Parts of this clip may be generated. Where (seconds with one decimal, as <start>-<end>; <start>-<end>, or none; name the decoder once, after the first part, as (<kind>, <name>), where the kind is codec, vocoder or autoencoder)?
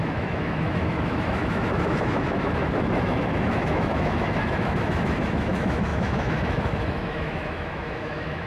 0.0-8.5 (autoencoder, DAC-VAE)